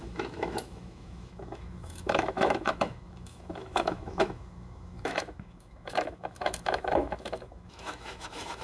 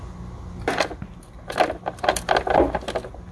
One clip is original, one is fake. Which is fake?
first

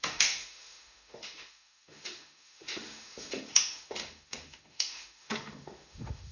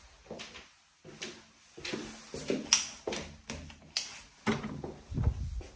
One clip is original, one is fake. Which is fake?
first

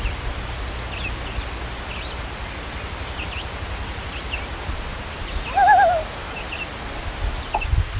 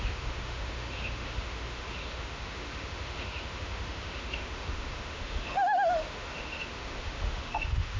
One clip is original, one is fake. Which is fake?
second